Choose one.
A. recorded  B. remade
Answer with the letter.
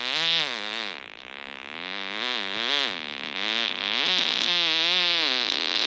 A